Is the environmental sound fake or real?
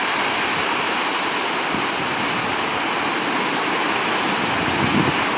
real